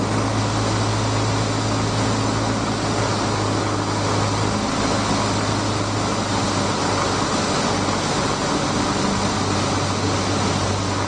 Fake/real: real